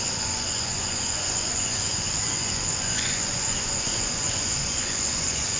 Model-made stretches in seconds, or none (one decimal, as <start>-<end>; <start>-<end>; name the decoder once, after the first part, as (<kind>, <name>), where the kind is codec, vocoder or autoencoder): 0.0-5.6 (vocoder, Vocos)